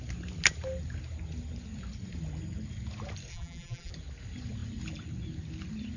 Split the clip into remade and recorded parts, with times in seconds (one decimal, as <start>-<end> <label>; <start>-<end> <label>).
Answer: 0.0-3.3 recorded; 3.3-3.9 remade; 3.9-6.0 recorded